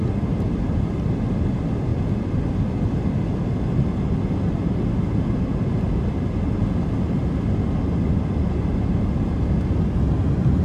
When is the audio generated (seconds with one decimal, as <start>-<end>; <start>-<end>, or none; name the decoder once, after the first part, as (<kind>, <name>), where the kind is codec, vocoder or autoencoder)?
none